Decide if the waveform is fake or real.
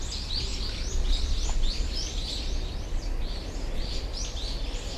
real